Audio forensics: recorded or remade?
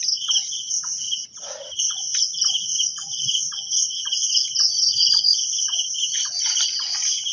recorded